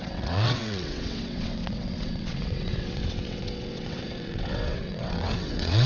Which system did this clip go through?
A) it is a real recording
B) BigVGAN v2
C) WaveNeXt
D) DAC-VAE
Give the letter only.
C